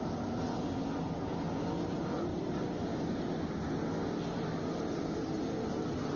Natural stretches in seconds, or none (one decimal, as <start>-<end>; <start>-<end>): 0.0-2.3; 3.1-6.2

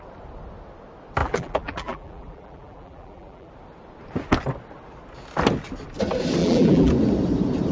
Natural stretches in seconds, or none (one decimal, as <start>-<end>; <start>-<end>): 0.0-1.2; 3.5-6.4; 6.9-7.7

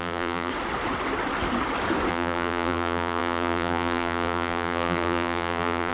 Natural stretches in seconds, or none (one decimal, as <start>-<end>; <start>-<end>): 0.5-2.1

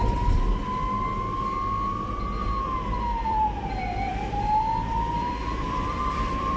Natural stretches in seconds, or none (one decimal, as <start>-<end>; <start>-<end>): 0.0-2.4